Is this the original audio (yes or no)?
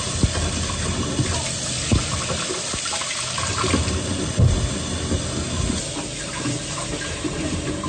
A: yes